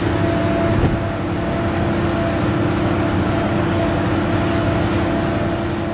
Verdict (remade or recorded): recorded